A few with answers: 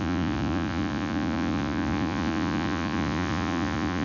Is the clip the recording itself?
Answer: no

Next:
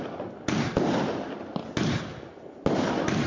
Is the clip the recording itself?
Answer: yes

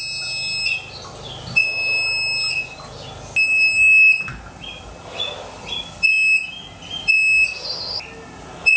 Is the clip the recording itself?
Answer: yes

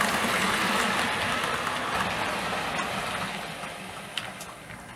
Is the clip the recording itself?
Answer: yes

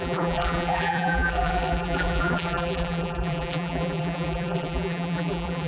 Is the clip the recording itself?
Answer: no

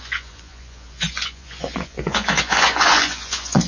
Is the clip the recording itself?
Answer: no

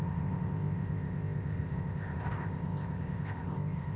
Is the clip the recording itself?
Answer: no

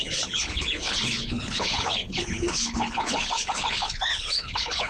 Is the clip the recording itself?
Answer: no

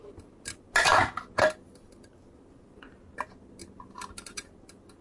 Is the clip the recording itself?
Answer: yes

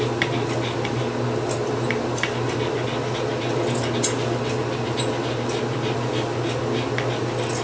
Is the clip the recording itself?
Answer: yes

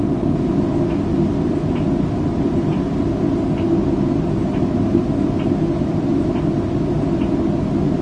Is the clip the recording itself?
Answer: yes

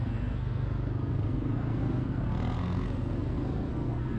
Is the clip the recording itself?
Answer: no